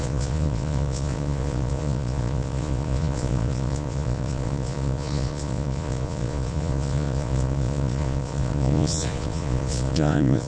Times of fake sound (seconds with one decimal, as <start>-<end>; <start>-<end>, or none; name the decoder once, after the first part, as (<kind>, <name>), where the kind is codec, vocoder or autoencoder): 0.0-10.5 (vocoder, Vocos)